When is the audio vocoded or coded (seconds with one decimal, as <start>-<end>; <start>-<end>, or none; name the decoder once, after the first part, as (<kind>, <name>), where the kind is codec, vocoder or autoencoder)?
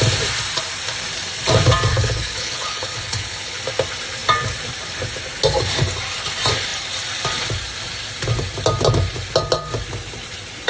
1.9-3.6 (codec, HILCodec)